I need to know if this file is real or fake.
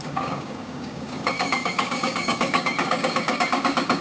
fake